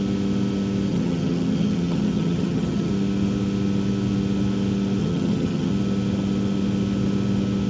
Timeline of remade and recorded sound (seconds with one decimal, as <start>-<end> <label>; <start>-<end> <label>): 0.0-0.9 recorded; 0.9-2.9 remade; 2.9-5.0 recorded; 5.0-5.7 remade; 5.7-7.7 recorded